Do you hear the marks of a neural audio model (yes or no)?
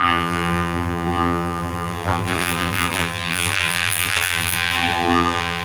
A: yes